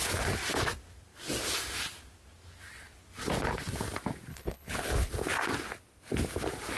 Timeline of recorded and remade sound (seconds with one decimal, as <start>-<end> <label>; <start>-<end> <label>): 0.0-4.3 recorded; 4.3-5.1 remade; 5.1-6.8 recorded